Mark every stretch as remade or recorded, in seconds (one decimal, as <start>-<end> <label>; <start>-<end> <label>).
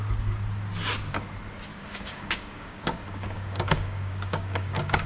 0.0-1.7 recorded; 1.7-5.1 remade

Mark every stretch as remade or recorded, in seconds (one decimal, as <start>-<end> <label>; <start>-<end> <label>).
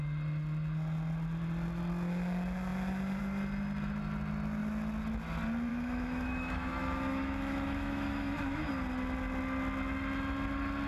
0.0-5.7 recorded; 5.7-8.7 remade; 8.7-10.9 recorded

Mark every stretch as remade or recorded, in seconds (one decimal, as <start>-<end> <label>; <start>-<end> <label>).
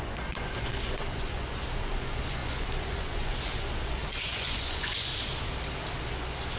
0.0-5.1 remade; 5.1-6.1 recorded; 6.1-6.6 remade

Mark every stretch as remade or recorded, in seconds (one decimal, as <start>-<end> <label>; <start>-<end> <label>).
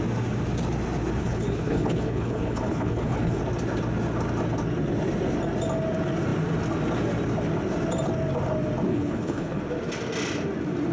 0.0-1.2 recorded; 1.2-3.4 remade; 3.4-8.9 recorded; 8.9-9.6 remade; 9.6-10.9 recorded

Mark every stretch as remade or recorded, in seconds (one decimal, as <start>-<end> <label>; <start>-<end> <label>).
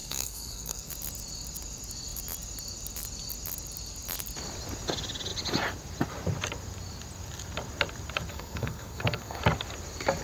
0.0-0.9 remade; 0.9-8.3 recorded; 8.3-9.4 remade; 9.4-10.2 recorded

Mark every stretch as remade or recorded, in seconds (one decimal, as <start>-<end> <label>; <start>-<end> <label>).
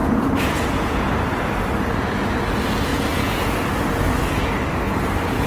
0.0-1.1 remade; 1.1-2.9 recorded; 2.9-3.5 remade; 3.5-5.5 recorded